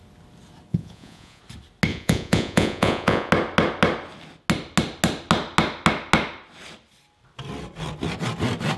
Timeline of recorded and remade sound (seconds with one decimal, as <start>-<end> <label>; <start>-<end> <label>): 0.0-0.7 recorded; 0.7-1.4 remade; 1.4-1.9 recorded; 1.9-3.3 remade; 3.3-8.8 recorded